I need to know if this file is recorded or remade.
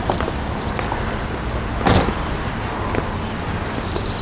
recorded